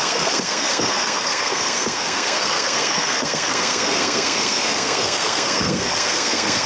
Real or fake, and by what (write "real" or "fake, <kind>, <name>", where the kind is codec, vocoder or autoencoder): fake, codec, SNAC